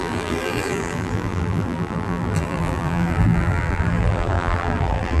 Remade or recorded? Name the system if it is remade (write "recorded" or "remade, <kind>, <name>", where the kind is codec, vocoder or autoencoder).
remade, vocoder, BigVGAN v2